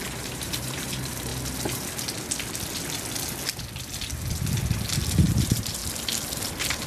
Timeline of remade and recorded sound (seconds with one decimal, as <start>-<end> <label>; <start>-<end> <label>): 0.0-1.3 remade; 1.3-5.2 recorded; 5.2-5.8 remade; 5.8-6.4 recorded; 6.4-6.9 remade